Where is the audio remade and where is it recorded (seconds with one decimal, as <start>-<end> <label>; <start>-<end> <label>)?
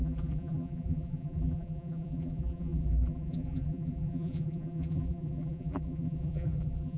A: 0.0-7.0 remade